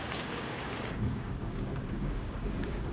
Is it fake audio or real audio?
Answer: fake